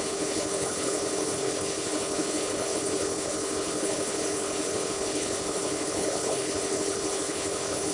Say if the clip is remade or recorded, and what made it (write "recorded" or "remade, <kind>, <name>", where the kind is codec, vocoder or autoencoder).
remade, codec, HILCodec